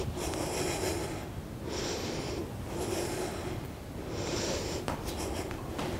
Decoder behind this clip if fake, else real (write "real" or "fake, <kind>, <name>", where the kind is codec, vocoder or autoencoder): real